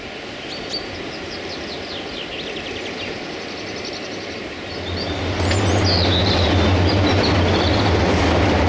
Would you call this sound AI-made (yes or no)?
no